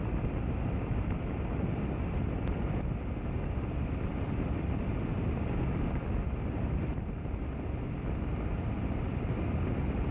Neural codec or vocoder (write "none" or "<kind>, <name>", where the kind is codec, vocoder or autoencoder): none